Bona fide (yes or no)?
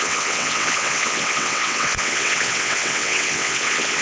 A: no